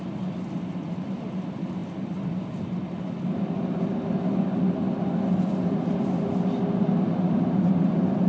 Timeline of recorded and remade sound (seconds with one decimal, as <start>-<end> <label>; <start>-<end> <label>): 0.0-8.3 recorded